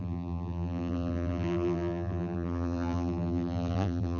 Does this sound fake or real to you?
fake